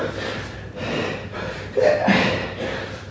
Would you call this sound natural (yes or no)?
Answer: yes